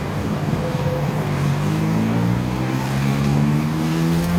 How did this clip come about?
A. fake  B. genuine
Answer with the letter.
A